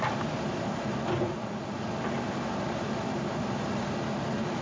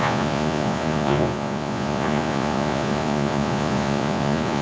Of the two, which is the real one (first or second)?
first